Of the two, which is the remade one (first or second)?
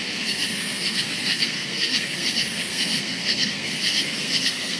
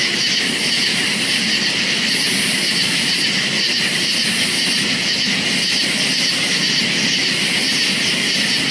first